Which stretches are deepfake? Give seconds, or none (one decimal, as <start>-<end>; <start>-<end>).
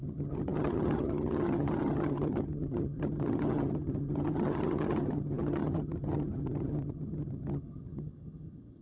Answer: 0.0-8.8